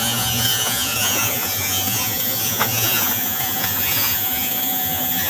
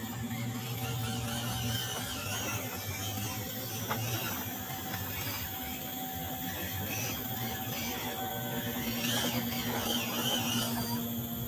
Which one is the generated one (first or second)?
first